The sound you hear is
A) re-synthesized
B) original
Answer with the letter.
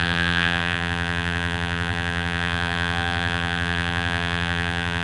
A